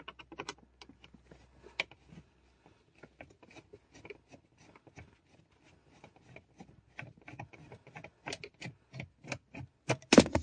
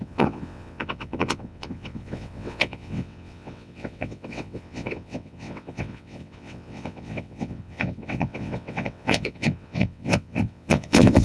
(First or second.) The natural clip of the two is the first